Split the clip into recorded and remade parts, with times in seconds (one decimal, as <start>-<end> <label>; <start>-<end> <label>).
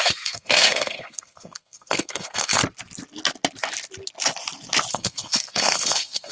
0.0-2.6 remade; 2.6-4.9 recorded; 4.9-6.3 remade